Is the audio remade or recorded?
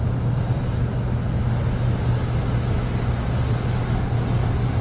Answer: recorded